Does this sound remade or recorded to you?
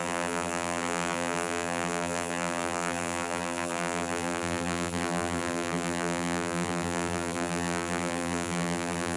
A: remade